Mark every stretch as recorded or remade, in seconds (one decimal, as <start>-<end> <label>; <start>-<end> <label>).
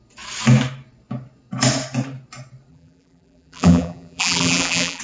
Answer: 0.0-2.7 recorded; 2.7-5.0 remade